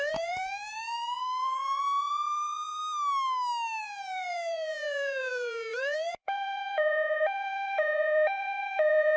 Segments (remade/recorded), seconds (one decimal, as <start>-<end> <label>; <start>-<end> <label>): 0.0-2.8 remade; 2.8-3.8 recorded; 3.8-9.2 remade